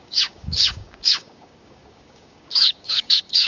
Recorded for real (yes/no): no